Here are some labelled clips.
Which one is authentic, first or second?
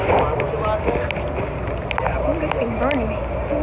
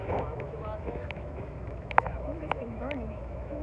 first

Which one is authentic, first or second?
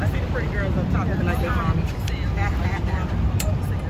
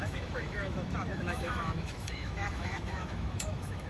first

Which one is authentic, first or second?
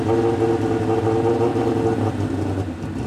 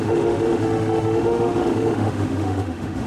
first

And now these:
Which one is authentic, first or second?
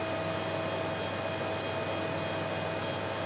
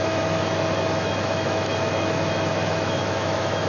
first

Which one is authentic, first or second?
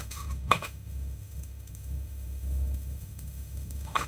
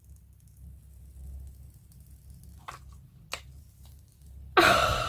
second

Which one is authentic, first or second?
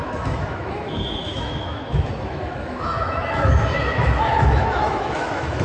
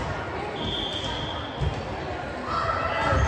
second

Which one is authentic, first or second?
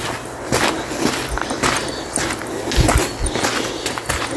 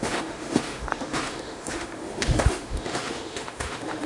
first